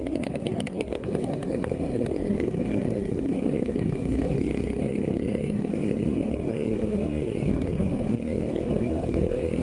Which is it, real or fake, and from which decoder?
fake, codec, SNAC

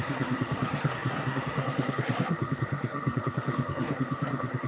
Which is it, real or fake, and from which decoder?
fake, codec, SNAC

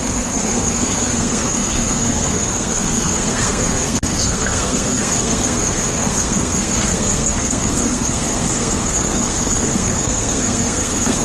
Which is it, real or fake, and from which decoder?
fake, codec, SNAC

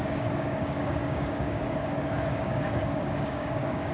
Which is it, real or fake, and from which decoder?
fake, codec, DAC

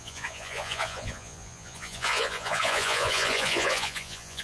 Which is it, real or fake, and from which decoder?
fake, vocoder, Vocos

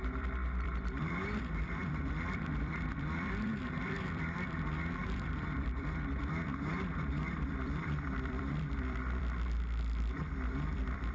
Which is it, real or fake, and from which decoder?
fake, vocoder, BigVGAN v2